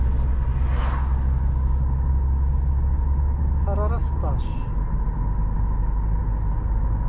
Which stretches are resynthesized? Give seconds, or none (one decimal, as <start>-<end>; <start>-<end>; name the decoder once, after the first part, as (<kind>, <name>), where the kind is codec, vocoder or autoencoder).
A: none